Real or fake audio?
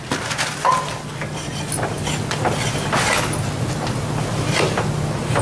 real